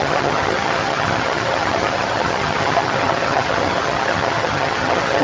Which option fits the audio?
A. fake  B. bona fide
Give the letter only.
A